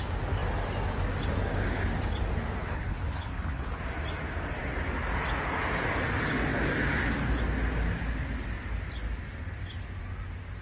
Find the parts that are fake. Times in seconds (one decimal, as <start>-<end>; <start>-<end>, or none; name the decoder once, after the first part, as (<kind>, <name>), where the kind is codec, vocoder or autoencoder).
2.6-3.8 (codec, HILCodec)